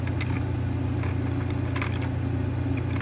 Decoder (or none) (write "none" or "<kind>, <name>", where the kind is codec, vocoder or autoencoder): none